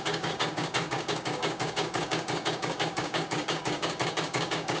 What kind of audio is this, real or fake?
fake